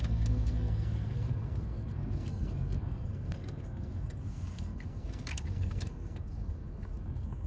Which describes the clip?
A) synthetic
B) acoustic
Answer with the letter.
A